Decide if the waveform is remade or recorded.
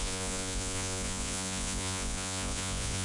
remade